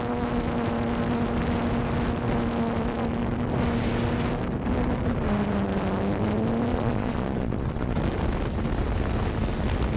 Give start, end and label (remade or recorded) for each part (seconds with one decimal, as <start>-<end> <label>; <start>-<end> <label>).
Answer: 0.0-6.7 recorded; 6.7-8.0 remade; 8.0-10.0 recorded